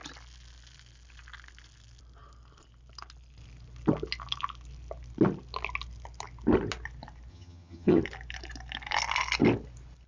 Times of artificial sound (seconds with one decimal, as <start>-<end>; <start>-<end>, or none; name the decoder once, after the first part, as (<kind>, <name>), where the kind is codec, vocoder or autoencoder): 7.3-8.0 (vocoder, HiFi-GAN)